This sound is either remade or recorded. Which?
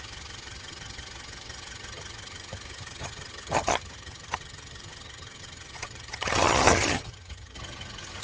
remade